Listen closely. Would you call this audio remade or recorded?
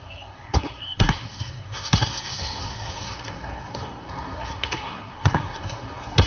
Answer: remade